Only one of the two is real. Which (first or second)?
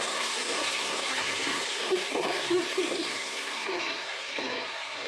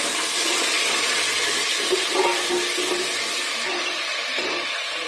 second